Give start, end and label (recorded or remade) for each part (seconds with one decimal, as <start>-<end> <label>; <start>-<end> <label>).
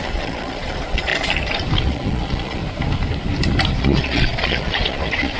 0.0-1.1 remade; 1.1-1.8 recorded; 1.8-2.6 remade; 2.6-3.8 recorded; 3.8-5.4 remade